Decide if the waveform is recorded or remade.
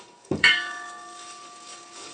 remade